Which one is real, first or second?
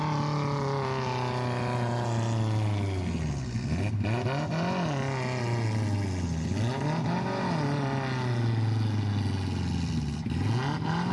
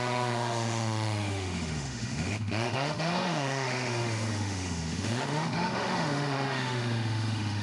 first